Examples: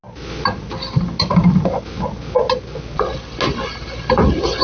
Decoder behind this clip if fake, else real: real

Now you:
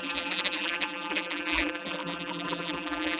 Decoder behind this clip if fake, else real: fake, vocoder, BigVGAN v2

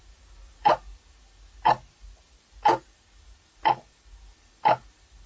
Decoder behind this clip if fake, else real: real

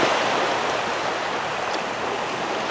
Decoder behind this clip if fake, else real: real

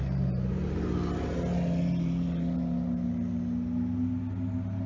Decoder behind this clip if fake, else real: real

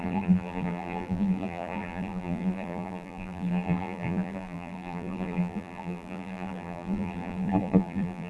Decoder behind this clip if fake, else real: fake, vocoder, BigVGAN v2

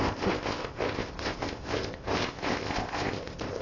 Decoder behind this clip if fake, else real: fake, codec, ZipCodec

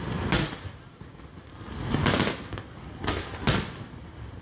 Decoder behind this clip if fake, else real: real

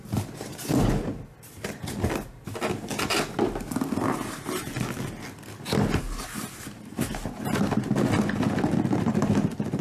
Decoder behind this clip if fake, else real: real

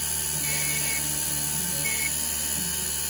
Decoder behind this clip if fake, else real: real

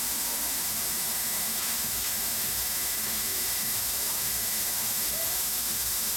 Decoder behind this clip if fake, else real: fake, autoencoder, DAC-VAE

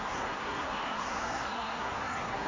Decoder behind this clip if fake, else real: fake, codec, SNAC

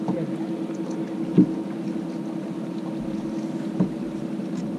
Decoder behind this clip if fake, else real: real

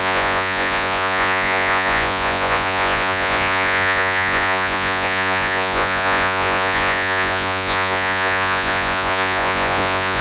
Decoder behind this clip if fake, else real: fake, vocoder, Vocos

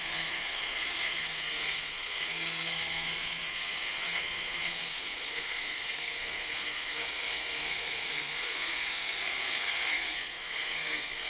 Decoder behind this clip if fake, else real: fake, codec, SNAC